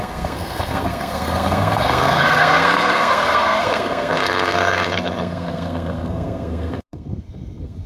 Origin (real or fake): fake